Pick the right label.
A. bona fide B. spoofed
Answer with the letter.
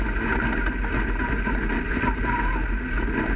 A